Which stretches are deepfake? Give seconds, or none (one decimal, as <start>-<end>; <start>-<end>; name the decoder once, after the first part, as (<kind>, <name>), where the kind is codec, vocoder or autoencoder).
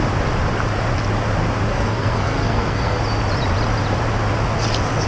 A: 1.7-3.0 (codec, SNAC)